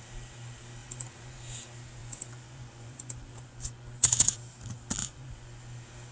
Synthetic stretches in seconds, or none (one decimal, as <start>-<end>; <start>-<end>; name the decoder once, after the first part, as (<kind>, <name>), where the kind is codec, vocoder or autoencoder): 0.8-1.4 (vocoder, Vocos); 2.0-4.4; 5.0-5.6